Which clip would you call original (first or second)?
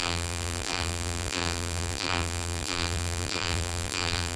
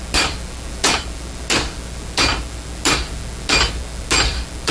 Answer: second